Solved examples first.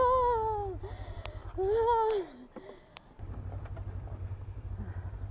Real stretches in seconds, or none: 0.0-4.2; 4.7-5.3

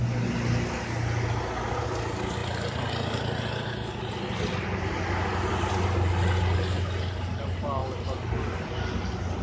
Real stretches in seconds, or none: 0.0-2.4; 3.2-9.4

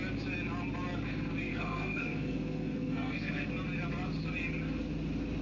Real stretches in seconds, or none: 0.0-1.5; 3.5-5.4

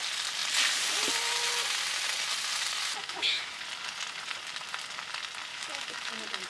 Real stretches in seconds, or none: 0.0-3.0; 3.6-5.5; 6.1-6.5

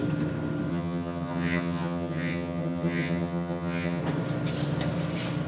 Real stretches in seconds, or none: 0.0-0.7; 4.0-5.5

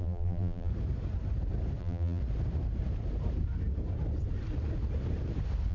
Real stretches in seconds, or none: 0.7-1.8; 2.2-5.7

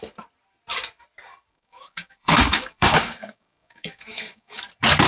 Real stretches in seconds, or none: 0.0-1.5; 4.6-5.1